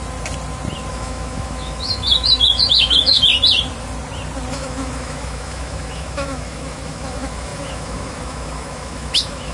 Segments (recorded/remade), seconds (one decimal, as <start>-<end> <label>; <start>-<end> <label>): 0.0-0.9 recorded; 0.9-3.3 remade; 3.3-4.5 recorded; 4.5-9.5 remade